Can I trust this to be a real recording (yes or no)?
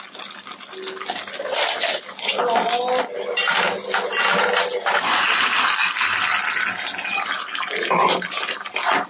yes